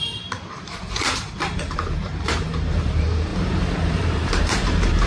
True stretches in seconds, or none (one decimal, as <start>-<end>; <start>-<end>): none